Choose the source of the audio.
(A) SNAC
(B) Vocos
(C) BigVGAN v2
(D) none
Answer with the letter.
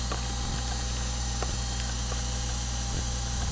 D